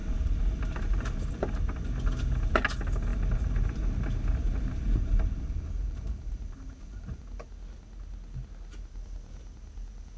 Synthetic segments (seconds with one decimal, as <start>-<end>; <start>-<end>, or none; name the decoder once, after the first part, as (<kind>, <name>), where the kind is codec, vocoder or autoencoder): 0.0-1.3 (vocoder, BigVGAN v2); 3.1-7.2